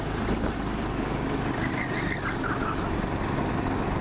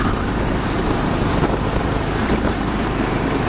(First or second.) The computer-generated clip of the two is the second